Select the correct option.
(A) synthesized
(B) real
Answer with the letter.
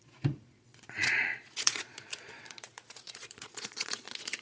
A